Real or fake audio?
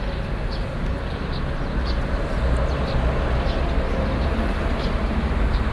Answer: real